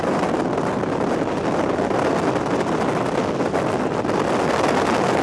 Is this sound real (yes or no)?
yes